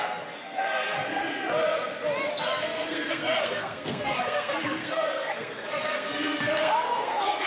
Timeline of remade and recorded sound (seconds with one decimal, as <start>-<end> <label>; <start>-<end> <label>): 0.0-1.2 remade; 1.2-2.3 recorded; 2.3-7.5 remade